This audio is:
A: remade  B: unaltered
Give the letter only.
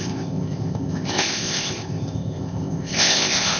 A